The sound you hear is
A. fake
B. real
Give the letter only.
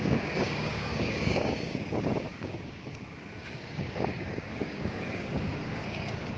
A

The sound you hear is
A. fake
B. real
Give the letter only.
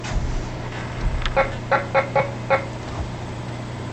B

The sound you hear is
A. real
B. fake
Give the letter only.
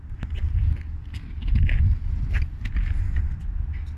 A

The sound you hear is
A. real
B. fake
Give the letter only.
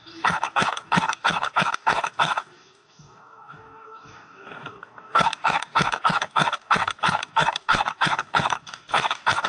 B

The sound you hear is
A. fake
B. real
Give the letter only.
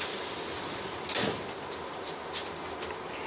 B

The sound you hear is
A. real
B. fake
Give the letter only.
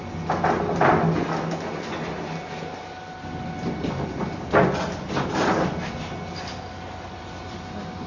A